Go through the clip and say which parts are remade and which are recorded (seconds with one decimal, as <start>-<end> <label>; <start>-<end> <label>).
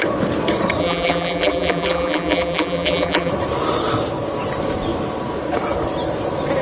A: 0.0-0.8 recorded; 0.8-3.3 remade; 3.3-6.6 recorded